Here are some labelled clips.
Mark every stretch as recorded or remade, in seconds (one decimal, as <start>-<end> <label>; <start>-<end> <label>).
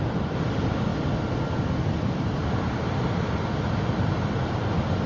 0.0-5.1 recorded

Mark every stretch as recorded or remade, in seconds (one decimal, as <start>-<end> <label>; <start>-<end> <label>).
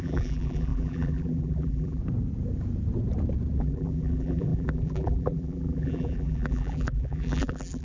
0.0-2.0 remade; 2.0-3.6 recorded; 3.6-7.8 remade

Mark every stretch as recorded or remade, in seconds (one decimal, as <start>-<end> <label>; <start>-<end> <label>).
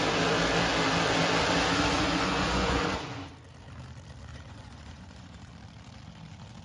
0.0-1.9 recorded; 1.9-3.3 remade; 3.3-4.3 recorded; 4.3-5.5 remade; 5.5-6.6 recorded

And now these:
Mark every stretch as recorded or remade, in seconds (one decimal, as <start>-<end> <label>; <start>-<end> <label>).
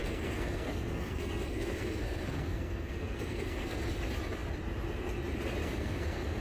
0.0-3.8 remade; 3.8-5.6 recorded; 5.6-6.4 remade